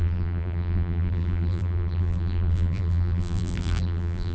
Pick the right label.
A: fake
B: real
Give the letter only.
A